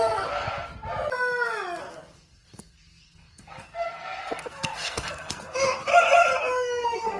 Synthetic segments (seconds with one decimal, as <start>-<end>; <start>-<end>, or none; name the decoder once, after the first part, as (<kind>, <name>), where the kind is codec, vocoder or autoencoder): 0.0-0.7 (codec, SNAC); 1.8-5.9; 6.4-7.2